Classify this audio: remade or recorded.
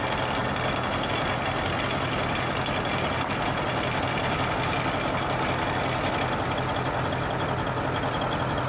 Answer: recorded